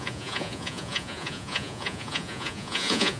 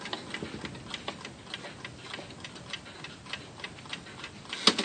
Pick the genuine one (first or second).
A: second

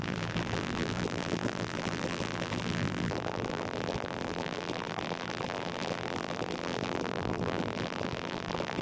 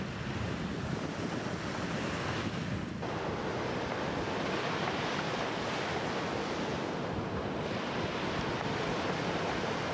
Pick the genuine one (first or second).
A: second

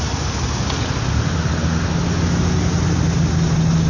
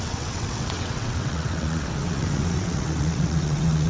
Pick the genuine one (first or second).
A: first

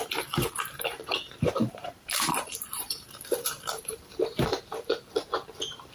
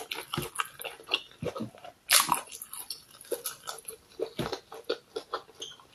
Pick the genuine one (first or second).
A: second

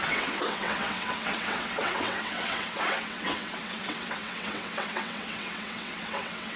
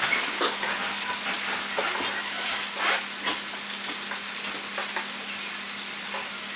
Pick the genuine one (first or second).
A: second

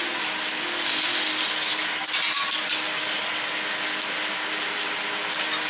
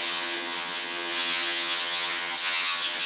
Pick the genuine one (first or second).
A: first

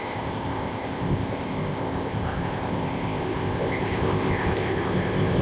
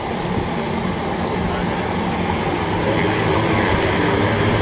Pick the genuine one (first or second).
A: second